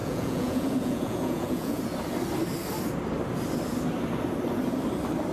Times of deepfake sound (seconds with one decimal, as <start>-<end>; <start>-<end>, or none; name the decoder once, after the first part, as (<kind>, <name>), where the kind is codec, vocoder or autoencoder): 0.0-1.8 (vocoder, Vocos)